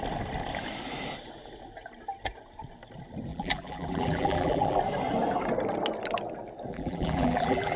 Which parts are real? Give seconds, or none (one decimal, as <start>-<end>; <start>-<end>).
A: 0.0-3.3; 4.8-6.7